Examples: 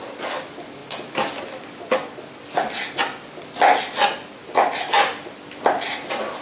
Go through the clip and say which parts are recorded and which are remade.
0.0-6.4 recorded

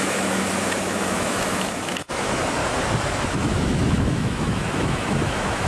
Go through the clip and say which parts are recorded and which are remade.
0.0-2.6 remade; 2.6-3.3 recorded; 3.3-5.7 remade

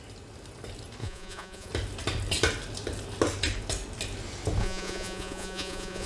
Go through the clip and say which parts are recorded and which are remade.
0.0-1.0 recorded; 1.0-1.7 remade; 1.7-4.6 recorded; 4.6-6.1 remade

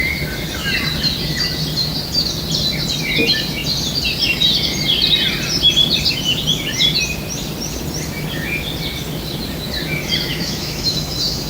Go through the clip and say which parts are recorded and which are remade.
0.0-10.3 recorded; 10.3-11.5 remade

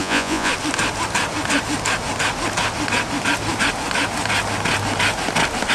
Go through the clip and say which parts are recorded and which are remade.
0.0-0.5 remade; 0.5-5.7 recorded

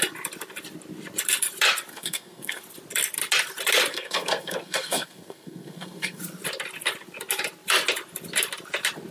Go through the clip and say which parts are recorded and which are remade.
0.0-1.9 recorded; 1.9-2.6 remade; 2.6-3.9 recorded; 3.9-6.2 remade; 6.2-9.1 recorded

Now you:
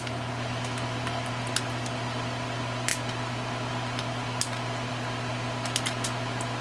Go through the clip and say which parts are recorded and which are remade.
0.0-6.6 recorded